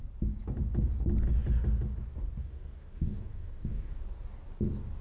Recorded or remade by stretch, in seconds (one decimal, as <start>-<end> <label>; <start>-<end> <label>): 0.0-2.4 recorded; 2.4-3.9 remade; 3.9-5.0 recorded